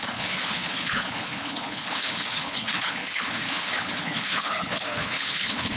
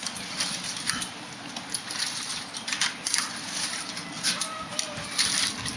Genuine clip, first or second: second